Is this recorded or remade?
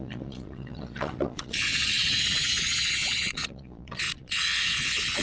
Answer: remade